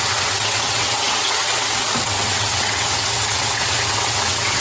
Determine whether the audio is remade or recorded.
remade